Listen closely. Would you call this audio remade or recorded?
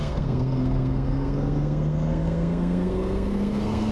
remade